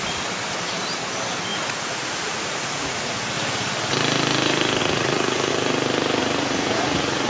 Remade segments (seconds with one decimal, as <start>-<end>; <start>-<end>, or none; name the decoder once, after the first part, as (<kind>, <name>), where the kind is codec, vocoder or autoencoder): 1.5-3.1 (vocoder, Vocos); 4.8-5.5; 6.2-7.3